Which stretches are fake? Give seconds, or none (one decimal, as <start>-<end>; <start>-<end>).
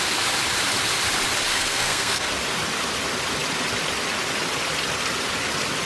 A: 1.5-2.3